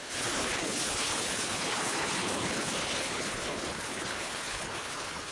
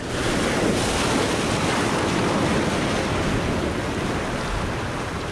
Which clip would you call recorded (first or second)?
second